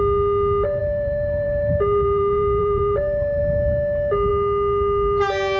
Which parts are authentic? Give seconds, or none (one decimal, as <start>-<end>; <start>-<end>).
0.0-0.8; 3.4-5.6

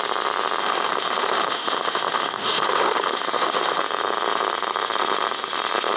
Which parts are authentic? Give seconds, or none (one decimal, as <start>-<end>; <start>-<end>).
0.0-0.6; 3.8-6.0